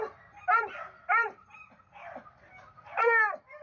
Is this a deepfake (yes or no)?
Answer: no